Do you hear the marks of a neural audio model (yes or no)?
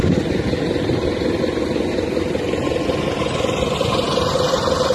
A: no